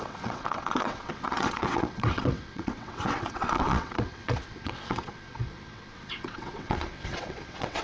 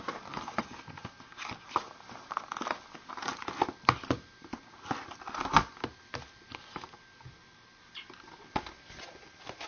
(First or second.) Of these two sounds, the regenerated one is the first